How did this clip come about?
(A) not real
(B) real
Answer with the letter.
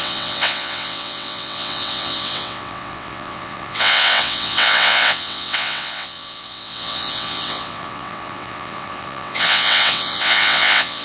A